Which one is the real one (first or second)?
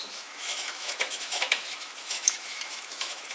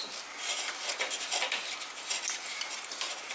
second